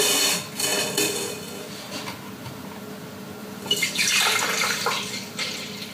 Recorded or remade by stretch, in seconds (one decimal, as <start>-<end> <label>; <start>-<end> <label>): 0.0-3.4 recorded; 3.4-4.2 remade; 4.2-5.9 recorded